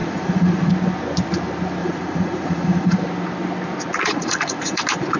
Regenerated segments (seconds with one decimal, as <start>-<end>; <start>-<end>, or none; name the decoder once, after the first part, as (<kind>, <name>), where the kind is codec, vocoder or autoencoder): 0.0-0.7 (vocoder, Vocos); 1.8-3.0; 4.0-4.8